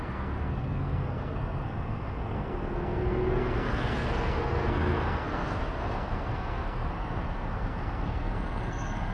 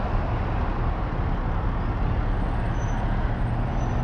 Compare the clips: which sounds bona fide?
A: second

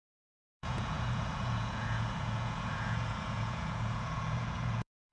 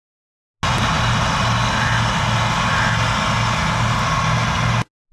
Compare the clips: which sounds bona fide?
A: second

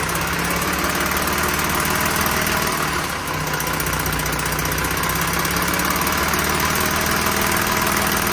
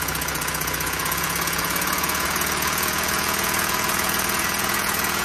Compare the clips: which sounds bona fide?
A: first